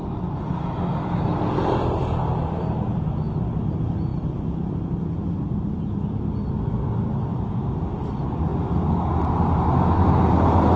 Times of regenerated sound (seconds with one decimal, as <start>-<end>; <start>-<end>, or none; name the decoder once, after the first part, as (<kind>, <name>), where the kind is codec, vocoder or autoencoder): none